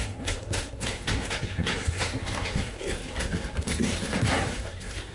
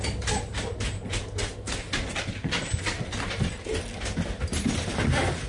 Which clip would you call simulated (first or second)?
first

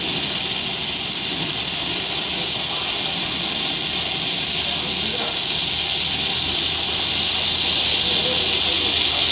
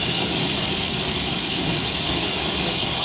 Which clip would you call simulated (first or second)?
second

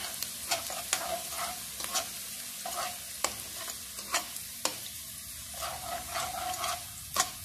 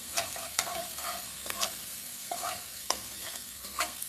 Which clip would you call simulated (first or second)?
second